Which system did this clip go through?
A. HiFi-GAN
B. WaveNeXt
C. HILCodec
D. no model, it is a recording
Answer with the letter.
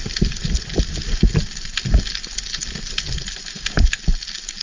D